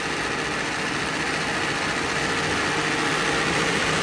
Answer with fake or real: real